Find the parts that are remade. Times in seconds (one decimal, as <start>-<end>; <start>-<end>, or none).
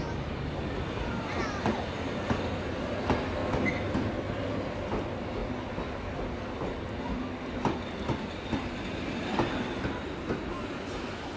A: none